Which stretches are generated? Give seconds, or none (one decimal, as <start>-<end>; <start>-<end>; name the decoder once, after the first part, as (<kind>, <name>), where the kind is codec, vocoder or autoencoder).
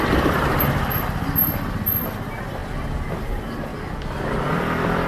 0.0-2.6 (vocoder, BigVGAN v2); 3.1-3.7; 4.5-5.1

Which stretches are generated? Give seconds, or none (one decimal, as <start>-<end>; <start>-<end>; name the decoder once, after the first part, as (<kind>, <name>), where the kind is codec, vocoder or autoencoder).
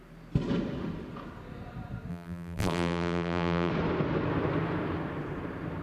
2.1-3.7 (vocoder, BigVGAN v2)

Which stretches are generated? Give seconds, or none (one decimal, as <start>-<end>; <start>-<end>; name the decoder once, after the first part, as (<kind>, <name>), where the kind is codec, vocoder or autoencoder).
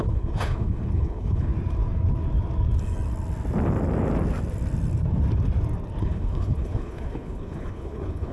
0.0-1.5 (codec, HILCodec); 6.0-8.3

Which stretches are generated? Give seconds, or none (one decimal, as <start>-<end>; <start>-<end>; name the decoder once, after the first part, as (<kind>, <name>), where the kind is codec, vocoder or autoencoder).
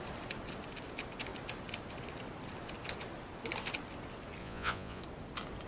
4.4-5.0 (vocoder, Vocos)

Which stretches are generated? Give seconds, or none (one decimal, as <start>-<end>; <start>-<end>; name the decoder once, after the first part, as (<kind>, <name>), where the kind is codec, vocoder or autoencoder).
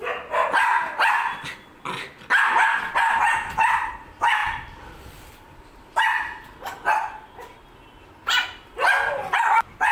2.9-3.9 (vocoder, BigVGAN v2); 4.4-6.6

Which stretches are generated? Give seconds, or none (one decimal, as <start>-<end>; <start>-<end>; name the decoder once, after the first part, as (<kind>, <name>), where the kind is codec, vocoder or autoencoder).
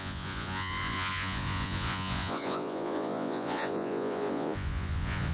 0.0-5.3 (vocoder, Vocos)